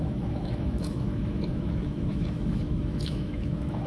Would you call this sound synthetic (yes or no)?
yes